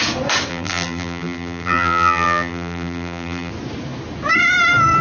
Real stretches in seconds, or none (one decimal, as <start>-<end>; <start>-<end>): 0.0-0.5; 3.5-5.0